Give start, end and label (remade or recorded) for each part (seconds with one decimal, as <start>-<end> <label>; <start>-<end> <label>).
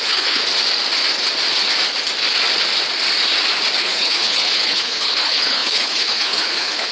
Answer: 0.0-0.4 remade; 0.4-3.8 recorded; 3.8-6.9 remade